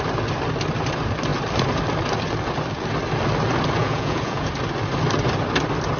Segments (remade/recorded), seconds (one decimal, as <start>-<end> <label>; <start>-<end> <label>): 0.0-3.8 recorded; 3.8-4.5 remade; 4.5-6.0 recorded